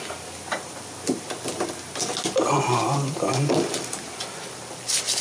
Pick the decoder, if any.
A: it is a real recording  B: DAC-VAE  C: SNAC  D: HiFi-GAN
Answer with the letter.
A